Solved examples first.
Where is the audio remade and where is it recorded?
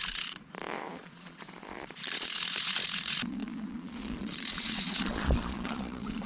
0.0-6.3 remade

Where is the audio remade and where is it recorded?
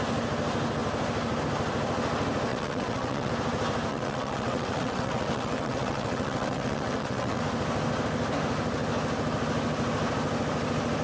0.0-2.5 recorded; 2.5-3.3 remade; 3.3-3.9 recorded; 3.9-7.4 remade; 7.4-11.0 recorded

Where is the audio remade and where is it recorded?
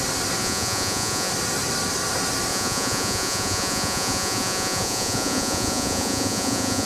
0.0-0.4 recorded; 0.4-1.3 remade; 1.3-2.5 recorded; 2.5-6.9 remade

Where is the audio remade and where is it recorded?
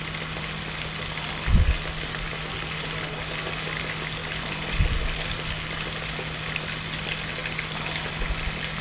0.0-8.8 recorded